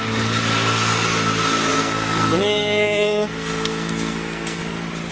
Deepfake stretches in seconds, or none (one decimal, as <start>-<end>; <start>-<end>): 1.7-4.6